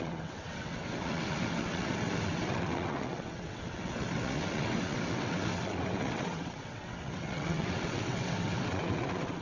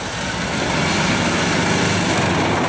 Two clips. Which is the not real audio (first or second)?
first